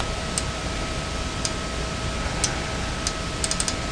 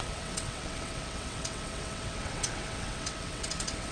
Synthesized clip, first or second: second